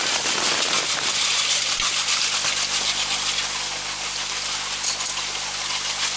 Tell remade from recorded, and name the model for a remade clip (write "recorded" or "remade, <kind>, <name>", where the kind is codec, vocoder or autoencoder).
recorded